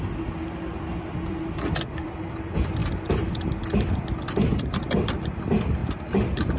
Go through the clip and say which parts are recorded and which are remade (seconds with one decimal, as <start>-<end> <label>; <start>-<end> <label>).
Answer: 0.0-0.9 recorded; 0.9-2.3 remade; 2.3-5.8 recorded; 5.8-6.6 remade